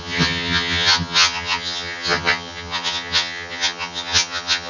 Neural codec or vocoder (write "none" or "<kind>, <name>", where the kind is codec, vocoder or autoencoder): vocoder, HiFi-GAN